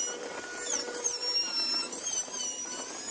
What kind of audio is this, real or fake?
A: real